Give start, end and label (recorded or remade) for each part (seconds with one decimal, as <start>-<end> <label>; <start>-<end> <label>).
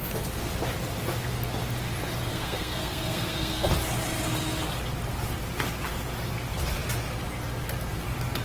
0.0-2.3 recorded; 2.3-3.7 remade; 3.7-8.4 recorded